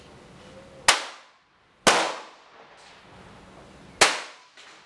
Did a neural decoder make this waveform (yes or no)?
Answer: no